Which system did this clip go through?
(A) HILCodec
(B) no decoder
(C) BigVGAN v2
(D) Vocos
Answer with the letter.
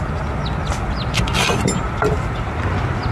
B